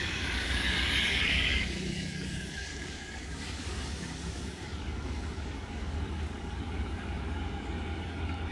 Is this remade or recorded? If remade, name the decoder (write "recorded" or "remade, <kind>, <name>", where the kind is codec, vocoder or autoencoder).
remade, codec, DAC